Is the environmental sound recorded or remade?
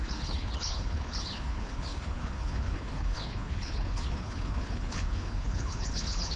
remade